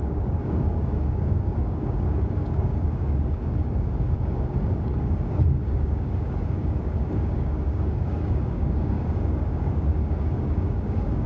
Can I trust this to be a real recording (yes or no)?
no